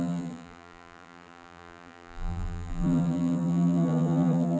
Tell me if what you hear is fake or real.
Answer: fake